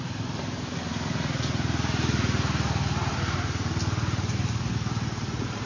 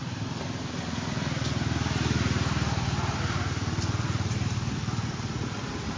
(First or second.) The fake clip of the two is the second